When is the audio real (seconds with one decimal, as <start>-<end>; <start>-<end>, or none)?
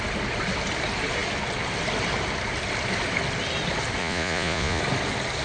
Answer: 0.0-4.0; 4.8-5.4